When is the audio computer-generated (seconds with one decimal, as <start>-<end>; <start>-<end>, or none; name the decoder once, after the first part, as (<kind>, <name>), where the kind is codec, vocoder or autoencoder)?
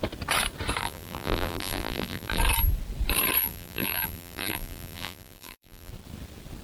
0.8-2.4 (vocoder, BigVGAN v2); 3.4-5.9